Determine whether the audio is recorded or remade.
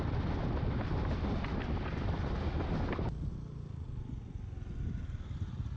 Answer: recorded